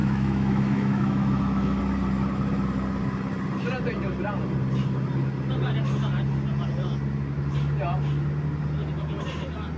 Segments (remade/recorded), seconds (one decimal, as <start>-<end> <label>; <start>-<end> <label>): 0.0-1.8 remade; 1.8-9.8 recorded